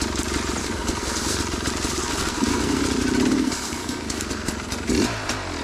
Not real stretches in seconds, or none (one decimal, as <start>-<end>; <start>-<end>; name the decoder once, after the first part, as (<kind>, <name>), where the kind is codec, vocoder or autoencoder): 0.6-1.4 (codec, SNAC); 2.0-2.8; 3.3-4.9